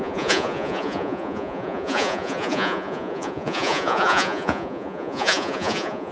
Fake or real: fake